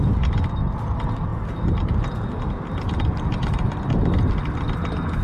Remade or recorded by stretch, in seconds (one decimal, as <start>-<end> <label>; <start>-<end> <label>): 0.0-5.2 recorded